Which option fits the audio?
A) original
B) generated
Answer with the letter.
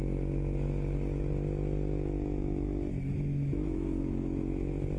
B